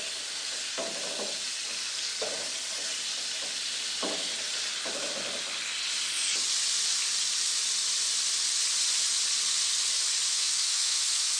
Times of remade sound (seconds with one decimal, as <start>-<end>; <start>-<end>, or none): 10.3-11.4